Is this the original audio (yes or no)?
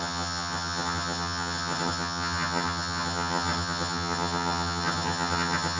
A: no